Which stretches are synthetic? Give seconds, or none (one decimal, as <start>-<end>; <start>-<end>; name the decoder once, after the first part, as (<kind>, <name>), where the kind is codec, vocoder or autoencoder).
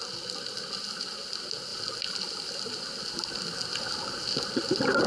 none